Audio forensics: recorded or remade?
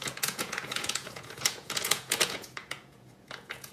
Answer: remade